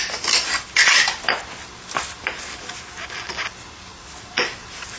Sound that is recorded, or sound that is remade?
recorded